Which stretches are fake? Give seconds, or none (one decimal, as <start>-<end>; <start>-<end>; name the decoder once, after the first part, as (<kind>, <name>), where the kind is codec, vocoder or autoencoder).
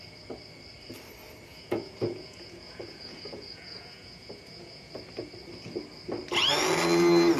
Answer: 1.5-4.9 (vocoder, Vocos)